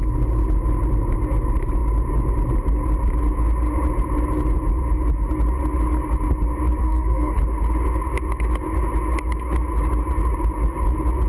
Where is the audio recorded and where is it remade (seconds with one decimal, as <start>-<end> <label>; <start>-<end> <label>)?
0.0-6.8 recorded; 6.8-7.4 remade; 7.4-11.3 recorded